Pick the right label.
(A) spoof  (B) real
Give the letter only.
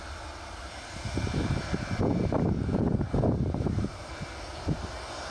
B